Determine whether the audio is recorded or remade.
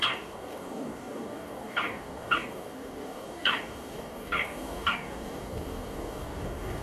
remade